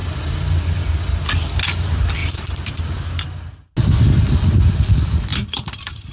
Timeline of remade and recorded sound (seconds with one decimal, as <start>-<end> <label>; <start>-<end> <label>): 0.0-1.0 remade; 1.0-2.2 recorded; 2.2-2.8 remade; 2.8-5.3 recorded; 5.3-6.1 remade